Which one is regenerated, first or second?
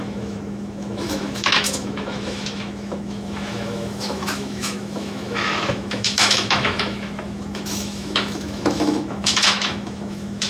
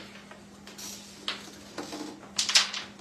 first